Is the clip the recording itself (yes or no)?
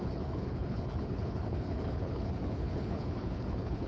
no